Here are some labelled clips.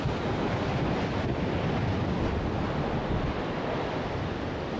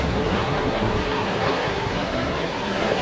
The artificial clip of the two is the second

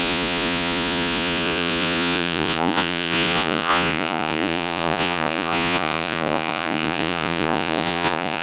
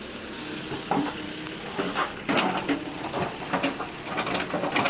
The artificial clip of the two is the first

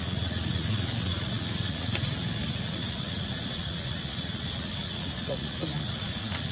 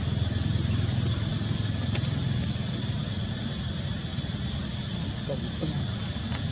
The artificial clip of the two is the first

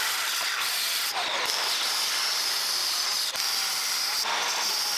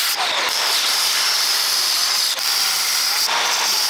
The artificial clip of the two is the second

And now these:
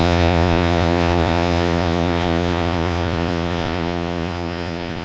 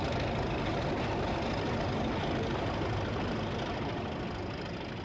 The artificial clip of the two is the first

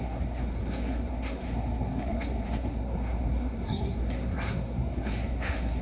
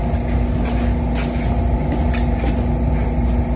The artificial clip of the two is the first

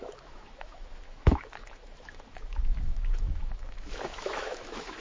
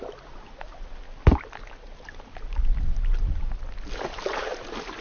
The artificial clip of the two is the first